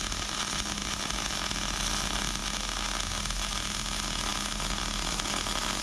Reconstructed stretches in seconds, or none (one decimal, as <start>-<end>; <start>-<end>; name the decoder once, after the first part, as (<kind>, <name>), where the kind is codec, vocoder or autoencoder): none